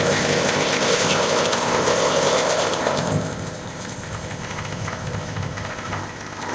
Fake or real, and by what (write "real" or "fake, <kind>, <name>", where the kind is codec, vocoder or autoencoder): fake, codec, ZipCodec